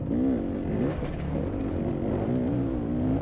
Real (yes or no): yes